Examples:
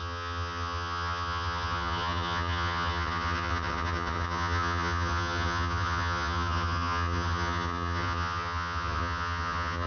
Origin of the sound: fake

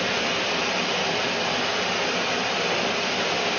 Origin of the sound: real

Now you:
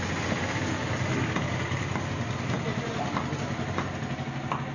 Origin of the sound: real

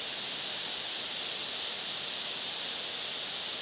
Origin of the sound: real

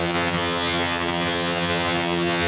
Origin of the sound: fake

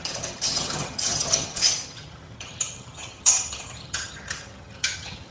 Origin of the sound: fake